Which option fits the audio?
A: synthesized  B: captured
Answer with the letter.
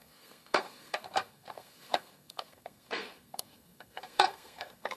A